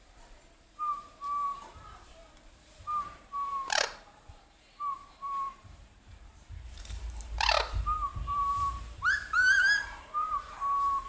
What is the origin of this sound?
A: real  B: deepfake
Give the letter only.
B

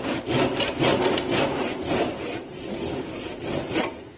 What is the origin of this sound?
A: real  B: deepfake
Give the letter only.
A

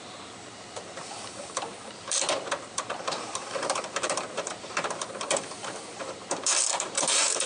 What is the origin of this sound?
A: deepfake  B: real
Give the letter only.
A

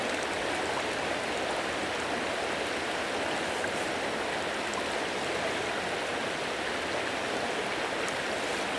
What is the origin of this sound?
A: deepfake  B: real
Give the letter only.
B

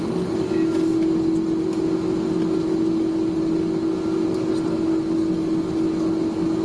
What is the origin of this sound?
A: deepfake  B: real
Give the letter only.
B